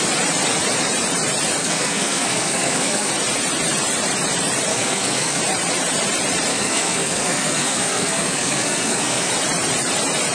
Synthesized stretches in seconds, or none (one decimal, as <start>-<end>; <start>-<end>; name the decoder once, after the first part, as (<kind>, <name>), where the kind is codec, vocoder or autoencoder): 1.6-3.1 (codec, SNAC); 4.7-5.4; 6.5-9.3